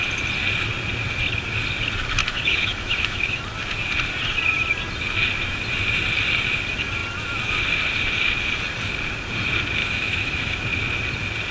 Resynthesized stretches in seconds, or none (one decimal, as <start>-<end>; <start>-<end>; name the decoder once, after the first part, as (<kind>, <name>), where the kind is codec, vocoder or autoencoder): 2.2-3.4 (autoencoder, DAC-VAE); 9.8-10.6